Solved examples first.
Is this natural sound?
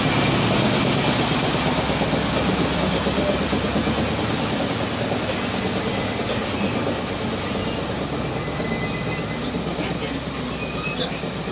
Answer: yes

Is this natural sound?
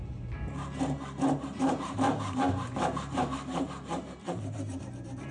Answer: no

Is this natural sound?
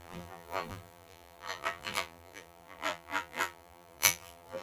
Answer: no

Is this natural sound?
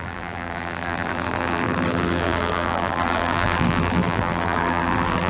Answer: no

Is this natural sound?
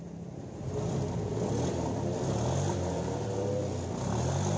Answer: yes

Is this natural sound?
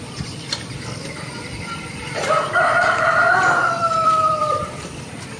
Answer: no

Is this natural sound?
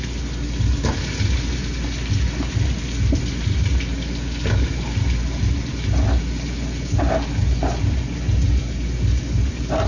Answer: yes